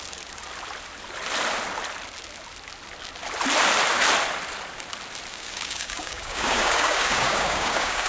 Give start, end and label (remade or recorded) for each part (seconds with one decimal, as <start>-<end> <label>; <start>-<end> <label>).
0.0-5.3 recorded; 5.3-8.1 remade